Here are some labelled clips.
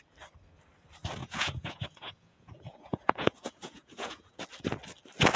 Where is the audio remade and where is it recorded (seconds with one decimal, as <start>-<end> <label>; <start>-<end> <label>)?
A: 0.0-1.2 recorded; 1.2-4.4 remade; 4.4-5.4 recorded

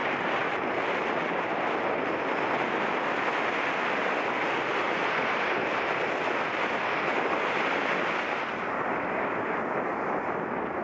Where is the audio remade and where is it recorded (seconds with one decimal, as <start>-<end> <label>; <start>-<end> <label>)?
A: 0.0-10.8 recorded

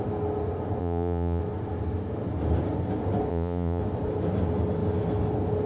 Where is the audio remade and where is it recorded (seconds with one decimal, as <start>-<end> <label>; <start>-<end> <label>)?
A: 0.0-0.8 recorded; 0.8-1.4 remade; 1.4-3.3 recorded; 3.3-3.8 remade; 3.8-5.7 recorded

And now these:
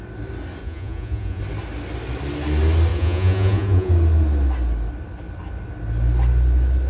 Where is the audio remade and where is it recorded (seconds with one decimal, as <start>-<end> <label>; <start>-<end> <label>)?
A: 0.0-0.6 recorded; 0.6-1.4 remade; 1.4-2.9 recorded; 2.9-3.9 remade; 3.9-6.9 recorded

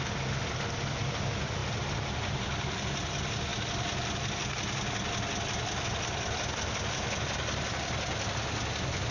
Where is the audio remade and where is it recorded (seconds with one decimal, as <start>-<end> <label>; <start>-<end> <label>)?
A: 0.0-9.1 recorded

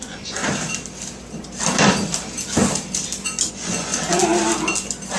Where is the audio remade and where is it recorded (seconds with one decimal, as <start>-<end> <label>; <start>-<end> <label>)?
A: 0.0-0.4 remade; 0.4-3.5 recorded; 3.5-3.9 remade; 3.9-5.2 recorded

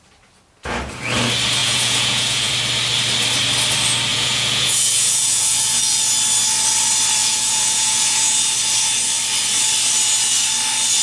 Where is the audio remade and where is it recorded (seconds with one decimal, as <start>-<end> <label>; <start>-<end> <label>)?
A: 0.0-1.6 recorded; 1.6-2.5 remade; 2.5-4.1 recorded; 4.1-6.0 remade; 6.0-7.2 recorded; 7.2-8.5 remade; 8.5-11.0 recorded

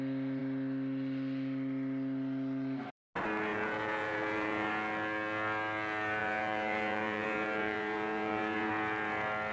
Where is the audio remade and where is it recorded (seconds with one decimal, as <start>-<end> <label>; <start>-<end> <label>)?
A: 0.0-3.5 recorded; 3.5-4.7 remade; 4.7-6.2 recorded; 6.2-8.7 remade; 8.7-9.5 recorded